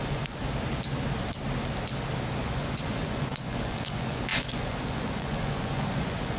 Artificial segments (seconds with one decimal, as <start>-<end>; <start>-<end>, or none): 0.0-0.4; 2.4-6.4